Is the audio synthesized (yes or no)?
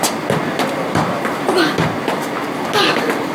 no